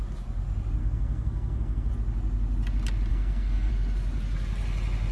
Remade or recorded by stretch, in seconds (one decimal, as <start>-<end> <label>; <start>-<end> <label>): 0.0-0.8 recorded; 0.8-1.9 remade; 1.9-3.1 recorded; 3.1-3.7 remade; 3.7-5.1 recorded